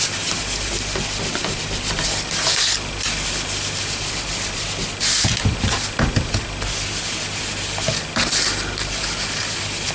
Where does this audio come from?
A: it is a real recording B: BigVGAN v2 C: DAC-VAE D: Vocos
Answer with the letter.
A